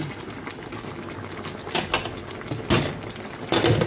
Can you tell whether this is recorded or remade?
recorded